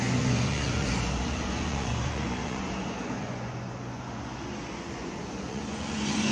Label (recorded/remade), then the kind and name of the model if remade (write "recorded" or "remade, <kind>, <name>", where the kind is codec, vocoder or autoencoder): remade, vocoder, Vocos